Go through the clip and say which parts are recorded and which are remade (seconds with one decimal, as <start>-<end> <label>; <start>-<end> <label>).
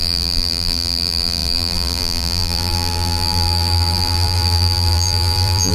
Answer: 0.0-5.7 remade